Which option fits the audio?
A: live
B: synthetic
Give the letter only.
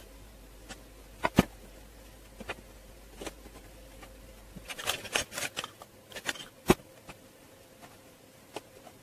A